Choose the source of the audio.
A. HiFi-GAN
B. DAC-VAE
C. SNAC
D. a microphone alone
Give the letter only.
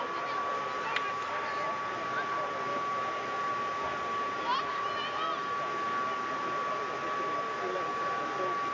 D